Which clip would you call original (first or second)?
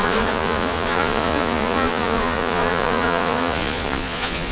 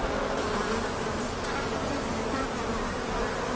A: second